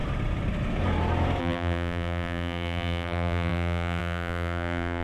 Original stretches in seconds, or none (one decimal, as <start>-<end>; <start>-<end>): 0.0-1.4